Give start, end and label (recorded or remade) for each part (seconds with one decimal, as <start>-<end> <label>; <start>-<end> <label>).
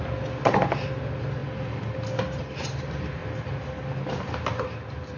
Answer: 0.0-5.2 recorded